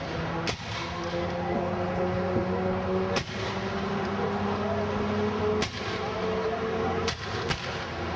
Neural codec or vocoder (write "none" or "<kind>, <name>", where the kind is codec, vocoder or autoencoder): none